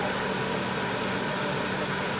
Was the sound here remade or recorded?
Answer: recorded